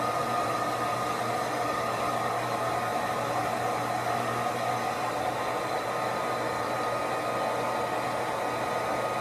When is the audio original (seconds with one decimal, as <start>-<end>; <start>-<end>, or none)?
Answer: 0.0-9.2